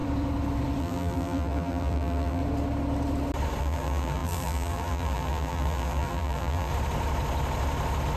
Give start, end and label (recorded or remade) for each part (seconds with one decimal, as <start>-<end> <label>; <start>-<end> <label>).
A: 0.0-0.8 recorded; 0.8-2.4 remade; 2.4-3.6 recorded; 3.6-6.7 remade; 6.7-8.2 recorded